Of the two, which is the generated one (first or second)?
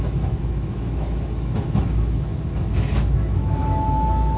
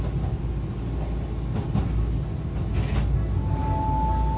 first